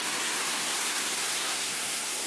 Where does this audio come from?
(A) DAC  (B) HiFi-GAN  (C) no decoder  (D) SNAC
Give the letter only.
D